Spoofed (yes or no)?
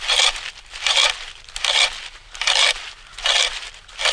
no